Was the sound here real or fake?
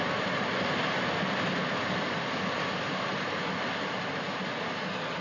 real